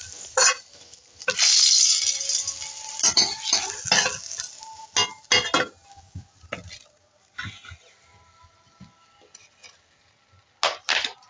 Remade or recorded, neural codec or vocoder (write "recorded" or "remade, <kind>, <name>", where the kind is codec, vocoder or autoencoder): recorded